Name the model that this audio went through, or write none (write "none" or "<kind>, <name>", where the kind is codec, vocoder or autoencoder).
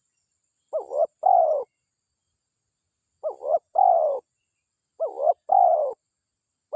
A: none